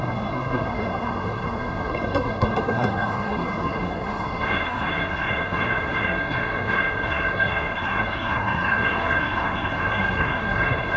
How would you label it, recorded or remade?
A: remade